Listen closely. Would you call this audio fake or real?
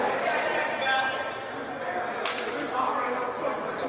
real